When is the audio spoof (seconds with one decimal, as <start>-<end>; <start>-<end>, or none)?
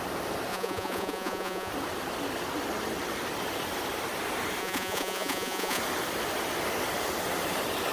0.5-1.7; 4.6-5.8